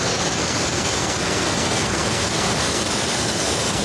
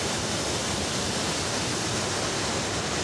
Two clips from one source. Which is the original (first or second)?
second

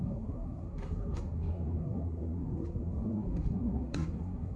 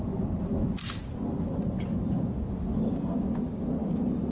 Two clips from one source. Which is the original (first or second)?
second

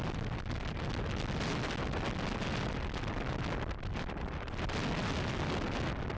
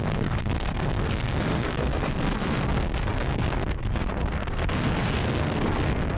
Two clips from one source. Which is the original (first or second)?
first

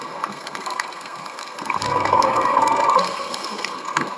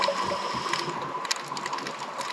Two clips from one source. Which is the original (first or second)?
second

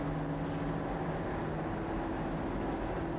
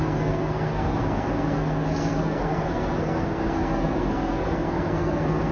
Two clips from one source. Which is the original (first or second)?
first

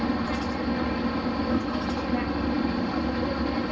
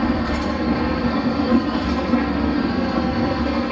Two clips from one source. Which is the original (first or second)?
first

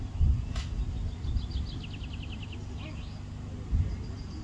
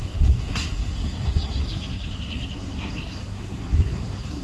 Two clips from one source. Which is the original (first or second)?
first